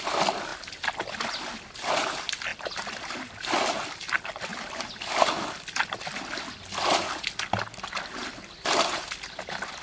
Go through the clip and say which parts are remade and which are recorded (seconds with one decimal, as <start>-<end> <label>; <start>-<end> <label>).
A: 0.0-9.8 recorded